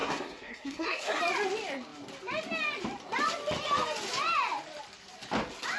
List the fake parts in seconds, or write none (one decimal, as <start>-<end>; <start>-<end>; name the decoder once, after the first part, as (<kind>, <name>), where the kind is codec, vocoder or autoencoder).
0.0-1.2 (codec, SNAC)